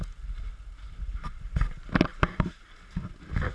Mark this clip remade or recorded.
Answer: recorded